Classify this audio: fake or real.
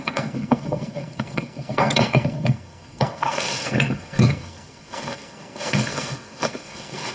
fake